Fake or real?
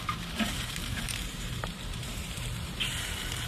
fake